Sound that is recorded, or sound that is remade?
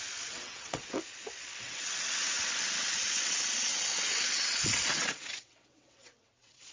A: remade